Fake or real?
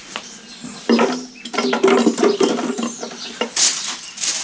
real